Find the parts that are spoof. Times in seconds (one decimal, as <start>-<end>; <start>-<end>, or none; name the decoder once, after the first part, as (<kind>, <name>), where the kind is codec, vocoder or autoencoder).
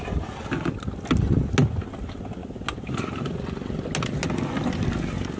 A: none